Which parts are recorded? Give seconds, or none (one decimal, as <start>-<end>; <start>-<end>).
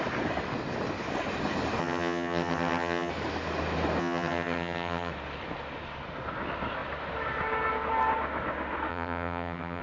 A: 0.0-1.8; 3.1-4.0; 5.1-8.9